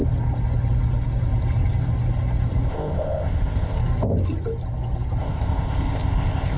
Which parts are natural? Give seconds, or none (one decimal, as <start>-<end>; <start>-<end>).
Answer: 0.0-2.7; 3.8-5.2